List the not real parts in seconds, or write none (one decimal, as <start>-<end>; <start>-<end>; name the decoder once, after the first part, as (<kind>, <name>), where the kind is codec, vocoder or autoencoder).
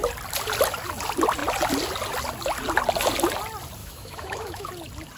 3.8-4.7 (autoencoder, DAC-VAE)